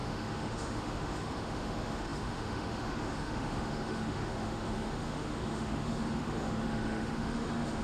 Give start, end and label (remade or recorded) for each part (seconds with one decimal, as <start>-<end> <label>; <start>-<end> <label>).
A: 0.0-7.8 remade